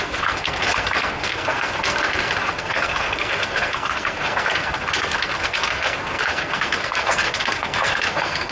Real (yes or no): no